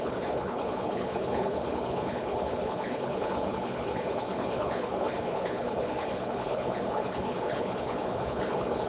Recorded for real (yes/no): no